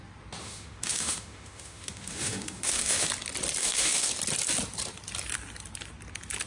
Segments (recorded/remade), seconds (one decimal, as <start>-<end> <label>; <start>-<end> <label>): 0.0-0.4 recorded; 0.4-3.1 remade; 3.1-3.6 recorded; 3.6-4.1 remade; 4.1-6.5 recorded